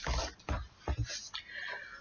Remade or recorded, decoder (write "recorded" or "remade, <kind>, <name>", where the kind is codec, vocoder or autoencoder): recorded